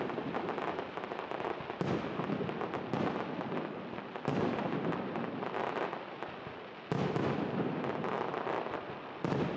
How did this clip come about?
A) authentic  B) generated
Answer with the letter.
A